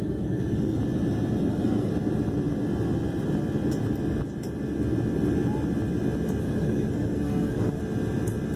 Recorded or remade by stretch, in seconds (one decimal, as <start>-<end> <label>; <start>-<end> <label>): 0.0-0.8 remade; 0.8-1.5 recorded; 1.5-1.9 remade; 1.9-6.4 recorded; 6.4-7.8 remade; 7.8-8.6 recorded